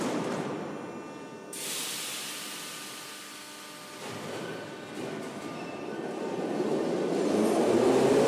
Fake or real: real